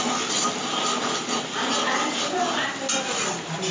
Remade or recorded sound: recorded